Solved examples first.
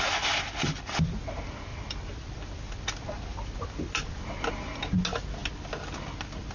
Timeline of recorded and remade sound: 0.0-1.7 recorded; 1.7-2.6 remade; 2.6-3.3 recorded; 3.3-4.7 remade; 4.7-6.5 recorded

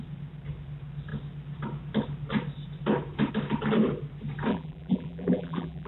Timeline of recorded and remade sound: 0.0-4.5 recorded; 4.5-5.9 remade

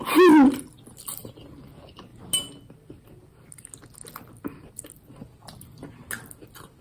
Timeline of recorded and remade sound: 0.0-6.8 recorded

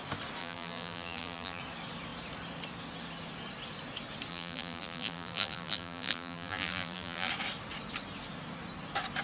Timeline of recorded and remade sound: 0.0-0.4 recorded; 0.4-1.6 remade; 1.6-4.3 recorded; 4.3-7.3 remade; 7.3-9.2 recorded

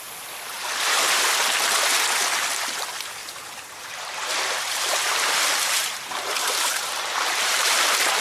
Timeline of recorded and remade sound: 0.0-3.2 recorded; 3.2-8.2 remade